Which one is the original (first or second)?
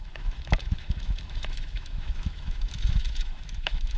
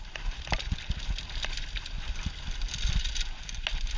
second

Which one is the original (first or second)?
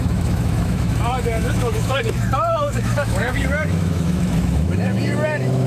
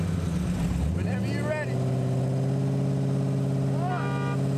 second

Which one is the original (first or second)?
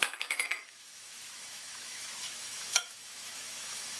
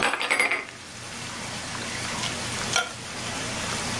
second